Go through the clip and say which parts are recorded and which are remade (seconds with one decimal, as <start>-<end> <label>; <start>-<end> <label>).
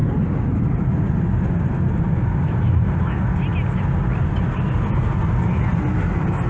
0.0-6.5 recorded